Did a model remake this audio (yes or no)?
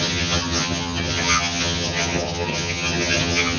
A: yes